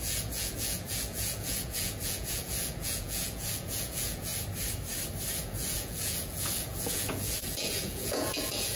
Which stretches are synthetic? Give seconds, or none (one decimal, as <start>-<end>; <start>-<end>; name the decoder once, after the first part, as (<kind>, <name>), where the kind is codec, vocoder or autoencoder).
0.0-4.3 (vocoder, Vocos); 5.4-8.8